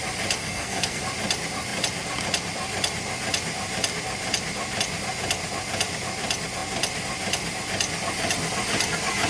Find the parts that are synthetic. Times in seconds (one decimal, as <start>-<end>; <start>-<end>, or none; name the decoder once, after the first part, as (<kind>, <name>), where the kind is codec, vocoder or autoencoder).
0.4-1.0 (codec, SNAC)